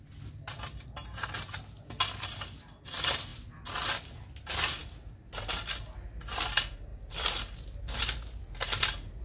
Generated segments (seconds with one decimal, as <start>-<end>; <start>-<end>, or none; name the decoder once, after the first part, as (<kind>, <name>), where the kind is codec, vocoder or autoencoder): none